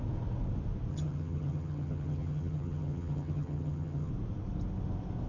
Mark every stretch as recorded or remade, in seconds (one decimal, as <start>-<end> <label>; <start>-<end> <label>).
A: 0.0-0.9 recorded; 0.9-4.1 remade; 4.1-5.3 recorded

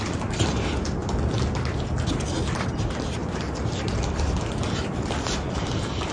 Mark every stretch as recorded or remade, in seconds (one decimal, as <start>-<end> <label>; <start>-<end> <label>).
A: 0.0-3.2 recorded; 3.2-4.5 remade; 4.5-6.1 recorded